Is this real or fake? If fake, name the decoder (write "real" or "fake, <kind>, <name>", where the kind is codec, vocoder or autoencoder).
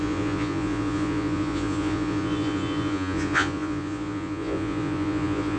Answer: fake, vocoder, Vocos